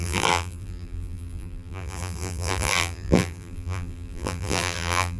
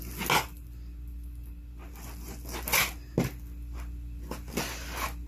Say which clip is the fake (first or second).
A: first